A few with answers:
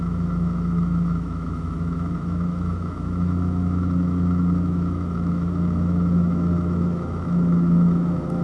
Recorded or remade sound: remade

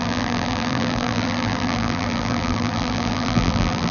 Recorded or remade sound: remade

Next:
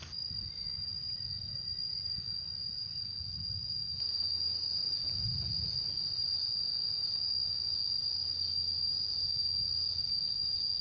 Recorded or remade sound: recorded